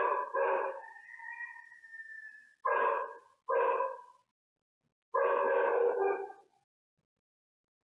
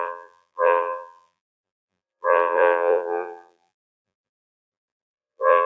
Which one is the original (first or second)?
first